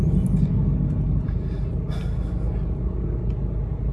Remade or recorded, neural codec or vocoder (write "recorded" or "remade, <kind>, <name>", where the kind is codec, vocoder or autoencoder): recorded